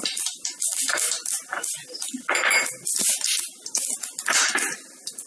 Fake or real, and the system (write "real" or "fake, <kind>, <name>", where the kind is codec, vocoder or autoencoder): real